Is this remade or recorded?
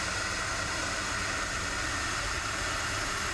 recorded